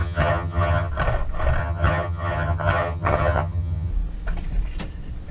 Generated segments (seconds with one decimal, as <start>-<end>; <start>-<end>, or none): 0.0-0.9; 1.6-3.9